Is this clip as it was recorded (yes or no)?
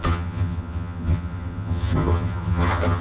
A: no